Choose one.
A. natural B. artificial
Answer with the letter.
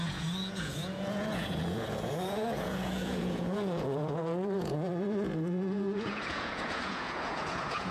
B